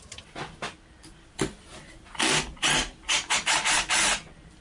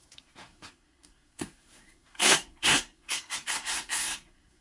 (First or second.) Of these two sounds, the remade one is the second